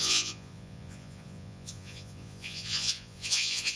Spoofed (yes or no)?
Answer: yes